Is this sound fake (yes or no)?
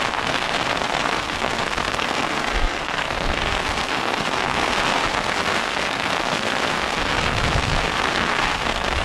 yes